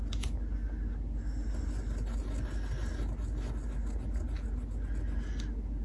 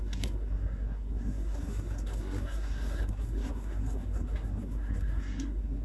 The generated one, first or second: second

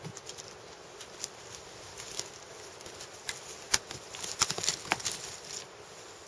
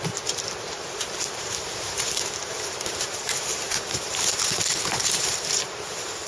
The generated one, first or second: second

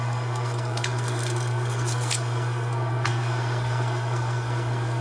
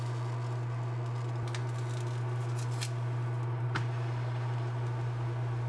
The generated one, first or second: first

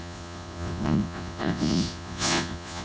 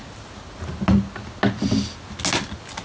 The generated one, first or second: first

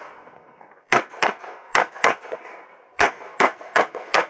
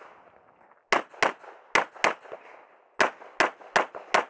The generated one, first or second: first